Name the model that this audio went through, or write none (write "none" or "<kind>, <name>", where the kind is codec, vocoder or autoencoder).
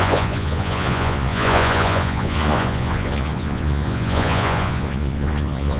vocoder, Vocos